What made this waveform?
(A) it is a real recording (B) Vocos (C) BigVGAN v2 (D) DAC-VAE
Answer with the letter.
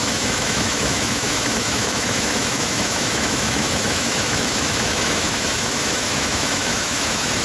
D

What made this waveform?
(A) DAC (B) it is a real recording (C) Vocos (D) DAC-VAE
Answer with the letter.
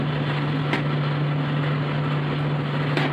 B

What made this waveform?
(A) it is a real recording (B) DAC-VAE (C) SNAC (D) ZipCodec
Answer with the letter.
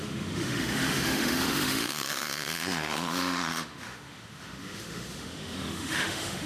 B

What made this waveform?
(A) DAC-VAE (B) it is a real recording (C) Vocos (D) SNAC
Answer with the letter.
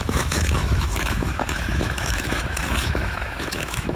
A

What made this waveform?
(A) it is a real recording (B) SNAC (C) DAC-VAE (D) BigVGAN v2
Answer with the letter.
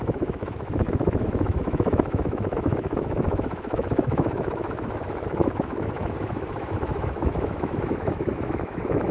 C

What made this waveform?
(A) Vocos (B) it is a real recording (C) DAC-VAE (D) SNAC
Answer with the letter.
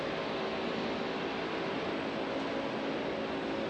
B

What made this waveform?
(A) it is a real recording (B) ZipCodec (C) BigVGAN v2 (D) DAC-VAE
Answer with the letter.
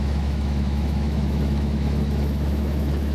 D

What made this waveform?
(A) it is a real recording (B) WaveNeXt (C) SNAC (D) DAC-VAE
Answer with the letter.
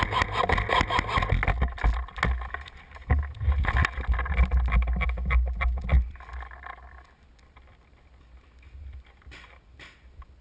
A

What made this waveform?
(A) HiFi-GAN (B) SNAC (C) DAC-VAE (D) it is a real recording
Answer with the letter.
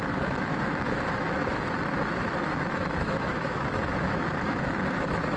C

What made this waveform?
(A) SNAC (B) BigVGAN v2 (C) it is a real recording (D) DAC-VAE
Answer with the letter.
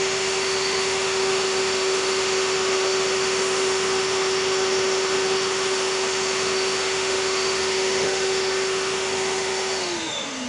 D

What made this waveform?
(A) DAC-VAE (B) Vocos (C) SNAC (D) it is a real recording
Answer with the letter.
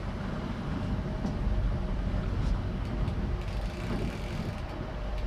D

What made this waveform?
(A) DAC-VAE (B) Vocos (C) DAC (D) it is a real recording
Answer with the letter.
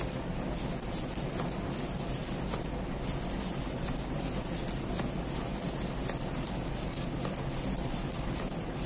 D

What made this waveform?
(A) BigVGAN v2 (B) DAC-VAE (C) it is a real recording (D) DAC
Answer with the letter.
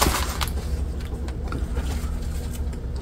C